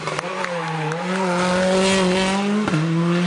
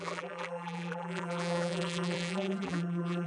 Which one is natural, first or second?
first